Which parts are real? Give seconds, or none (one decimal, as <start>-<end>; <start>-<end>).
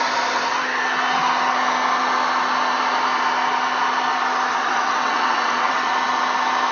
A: 0.0-4.5; 5.9-6.7